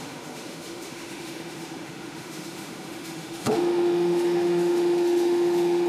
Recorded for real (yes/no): no